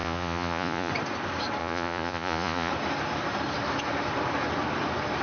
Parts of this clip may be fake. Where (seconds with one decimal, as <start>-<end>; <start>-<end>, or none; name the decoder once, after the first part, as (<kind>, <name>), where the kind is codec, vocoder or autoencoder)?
0.0-0.9 (vocoder, Vocos); 1.6-2.7